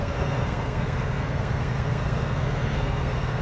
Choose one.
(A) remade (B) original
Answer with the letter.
A